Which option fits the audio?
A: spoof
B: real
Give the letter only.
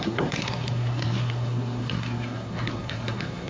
A